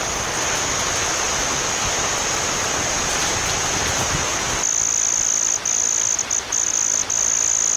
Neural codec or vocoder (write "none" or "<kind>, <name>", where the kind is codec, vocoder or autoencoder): none